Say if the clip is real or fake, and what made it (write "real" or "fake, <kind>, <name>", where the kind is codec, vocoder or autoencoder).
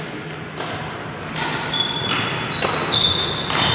real